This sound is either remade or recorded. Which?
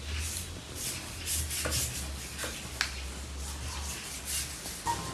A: recorded